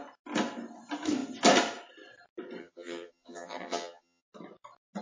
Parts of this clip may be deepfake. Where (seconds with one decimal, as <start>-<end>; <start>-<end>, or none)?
2.6-4.2